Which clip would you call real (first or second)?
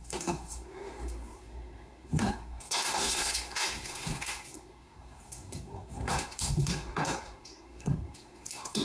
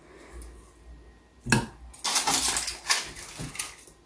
second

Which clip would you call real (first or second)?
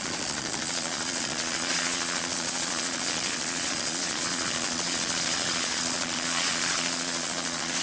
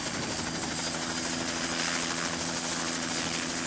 second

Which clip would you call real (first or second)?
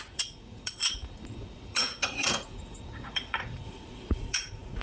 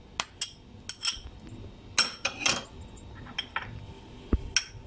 second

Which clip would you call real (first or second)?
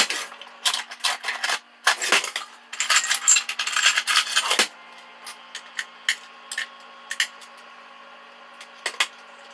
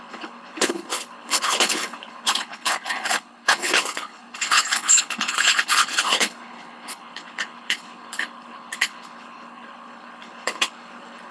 first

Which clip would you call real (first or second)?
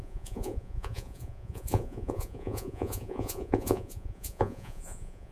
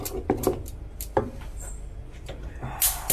second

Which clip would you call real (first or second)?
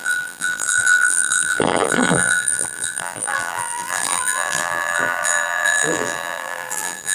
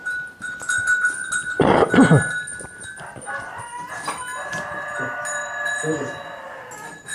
second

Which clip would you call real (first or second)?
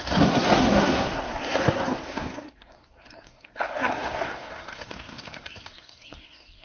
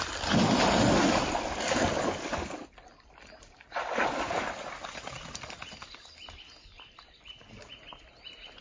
second